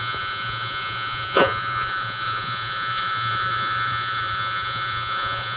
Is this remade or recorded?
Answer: remade